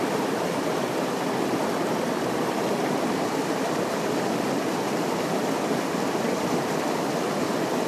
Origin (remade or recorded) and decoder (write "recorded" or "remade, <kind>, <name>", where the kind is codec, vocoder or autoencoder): remade, vocoder, BigVGAN v2